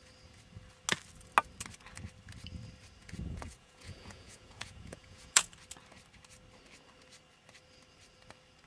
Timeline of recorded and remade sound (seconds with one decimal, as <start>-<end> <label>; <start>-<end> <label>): 0.0-3.0 recorded; 3.0-5.5 remade; 5.5-8.7 recorded